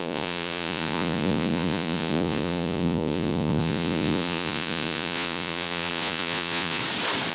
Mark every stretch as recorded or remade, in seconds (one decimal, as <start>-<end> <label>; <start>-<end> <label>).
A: 0.0-6.8 remade; 6.8-7.3 recorded